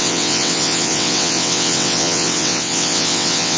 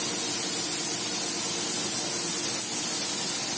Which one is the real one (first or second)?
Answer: second